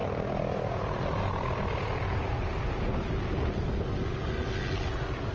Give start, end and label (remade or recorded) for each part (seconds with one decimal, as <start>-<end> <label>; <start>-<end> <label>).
0.0-5.3 recorded